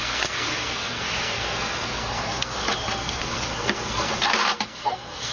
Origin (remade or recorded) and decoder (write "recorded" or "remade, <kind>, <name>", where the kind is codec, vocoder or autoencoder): remade, codec, SNAC